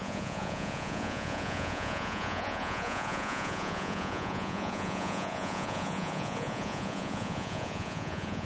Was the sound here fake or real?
fake